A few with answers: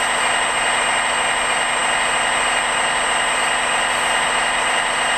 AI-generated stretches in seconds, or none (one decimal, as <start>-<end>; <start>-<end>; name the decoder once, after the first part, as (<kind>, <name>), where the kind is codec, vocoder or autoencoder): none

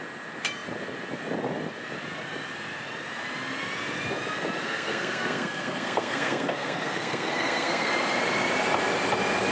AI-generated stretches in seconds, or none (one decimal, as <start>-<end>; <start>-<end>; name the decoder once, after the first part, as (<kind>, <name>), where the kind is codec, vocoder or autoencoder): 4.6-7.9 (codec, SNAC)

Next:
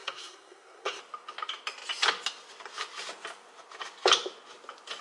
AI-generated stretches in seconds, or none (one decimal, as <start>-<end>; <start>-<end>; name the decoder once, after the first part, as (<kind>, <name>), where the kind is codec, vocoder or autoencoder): 0.0-1.0 (codec, SNAC)

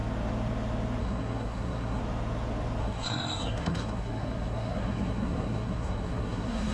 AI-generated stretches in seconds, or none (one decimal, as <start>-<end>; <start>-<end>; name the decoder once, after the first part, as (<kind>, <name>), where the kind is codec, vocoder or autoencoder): 1.0-2.0 (codec, SNAC); 2.8-6.7

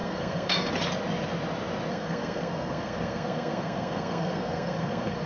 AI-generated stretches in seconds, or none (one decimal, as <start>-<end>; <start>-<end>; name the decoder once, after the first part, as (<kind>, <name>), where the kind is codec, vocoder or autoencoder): 0.0-0.7 (codec, SNAC); 1.9-5.3